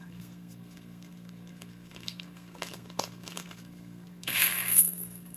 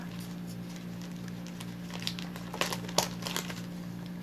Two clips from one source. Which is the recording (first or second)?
second